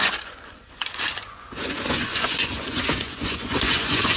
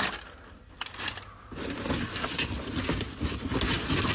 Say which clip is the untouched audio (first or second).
second